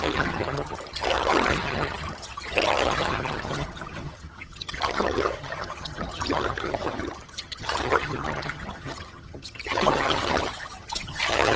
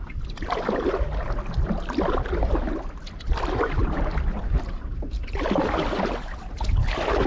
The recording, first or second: second